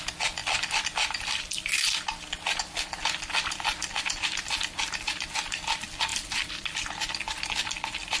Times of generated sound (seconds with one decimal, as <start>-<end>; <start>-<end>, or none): 0.4-4.5; 6.1-6.8